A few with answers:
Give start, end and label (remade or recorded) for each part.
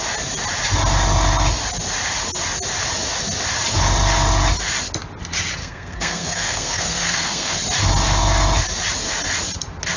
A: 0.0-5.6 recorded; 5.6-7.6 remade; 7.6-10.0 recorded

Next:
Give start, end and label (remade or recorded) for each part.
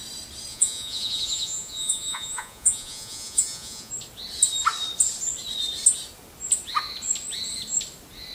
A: 0.0-0.5 recorded; 0.5-3.9 remade; 3.9-8.3 recorded